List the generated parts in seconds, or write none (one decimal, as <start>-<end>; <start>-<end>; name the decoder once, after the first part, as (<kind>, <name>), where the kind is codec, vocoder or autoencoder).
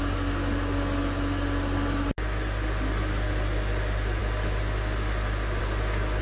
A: none